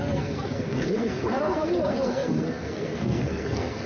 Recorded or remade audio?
remade